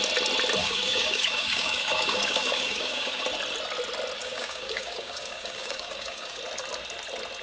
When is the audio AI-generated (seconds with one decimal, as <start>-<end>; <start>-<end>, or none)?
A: 0.6-3.2; 4.2-6.4